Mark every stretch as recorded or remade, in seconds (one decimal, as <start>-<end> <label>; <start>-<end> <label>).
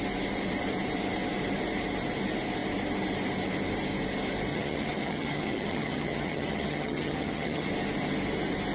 0.0-4.5 recorded; 4.5-7.7 remade; 7.7-8.7 recorded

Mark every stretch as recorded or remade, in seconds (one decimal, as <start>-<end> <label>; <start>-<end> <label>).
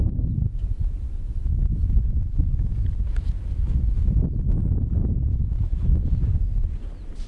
0.0-7.3 recorded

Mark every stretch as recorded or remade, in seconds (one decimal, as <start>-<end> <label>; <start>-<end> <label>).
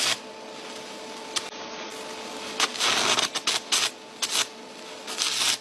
0.0-5.6 recorded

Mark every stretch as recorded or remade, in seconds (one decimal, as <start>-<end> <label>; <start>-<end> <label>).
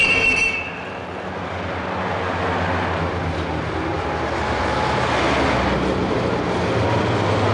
0.0-7.5 recorded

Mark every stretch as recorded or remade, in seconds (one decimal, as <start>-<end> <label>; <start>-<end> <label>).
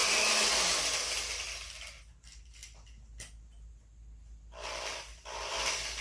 0.0-6.0 recorded